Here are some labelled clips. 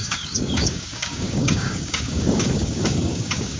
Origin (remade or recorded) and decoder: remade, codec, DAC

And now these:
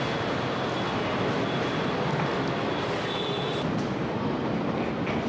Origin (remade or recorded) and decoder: recorded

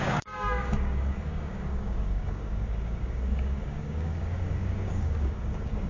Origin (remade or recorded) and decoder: remade, codec, DAC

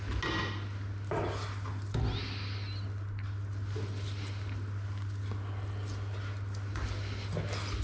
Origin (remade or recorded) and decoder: recorded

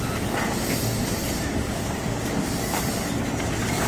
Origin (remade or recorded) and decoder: recorded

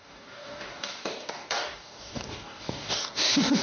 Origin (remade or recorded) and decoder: remade, codec, DAC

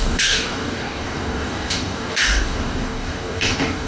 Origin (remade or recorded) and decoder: remade, codec, DAC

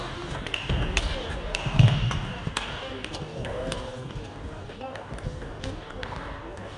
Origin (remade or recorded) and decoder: remade, codec, DAC